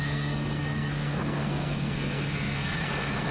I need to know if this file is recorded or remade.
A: remade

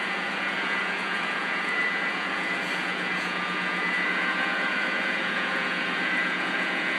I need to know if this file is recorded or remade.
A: remade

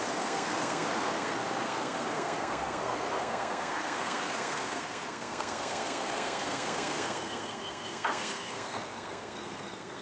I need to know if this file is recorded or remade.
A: remade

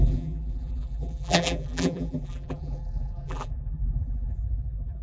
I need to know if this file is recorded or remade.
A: remade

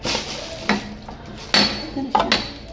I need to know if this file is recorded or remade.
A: recorded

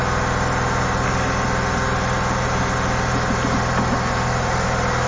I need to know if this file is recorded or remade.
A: recorded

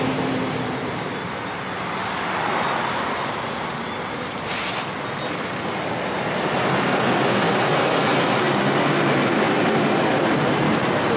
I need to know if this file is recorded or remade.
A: recorded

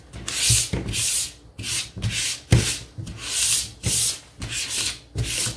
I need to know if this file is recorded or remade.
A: recorded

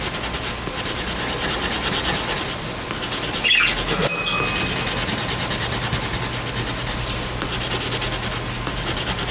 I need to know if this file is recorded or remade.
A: recorded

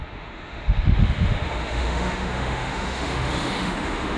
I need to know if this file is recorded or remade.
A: remade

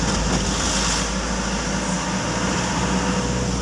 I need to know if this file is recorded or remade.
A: recorded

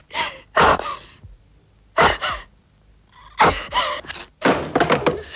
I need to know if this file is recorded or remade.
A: recorded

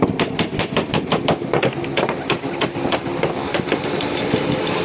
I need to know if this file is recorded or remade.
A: recorded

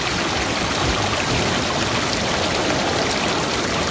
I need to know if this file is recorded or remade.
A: recorded